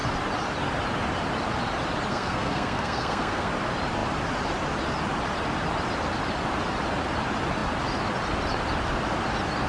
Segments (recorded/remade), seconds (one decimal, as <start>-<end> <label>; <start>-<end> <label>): 0.0-2.1 recorded; 2.1-3.5 remade; 3.5-9.7 recorded